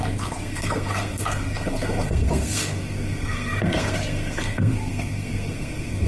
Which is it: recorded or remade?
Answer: remade